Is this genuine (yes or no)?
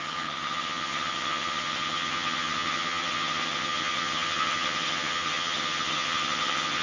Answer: no